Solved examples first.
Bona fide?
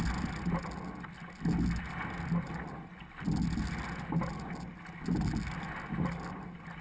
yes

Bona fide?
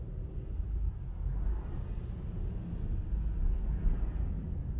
yes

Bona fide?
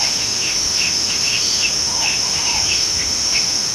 no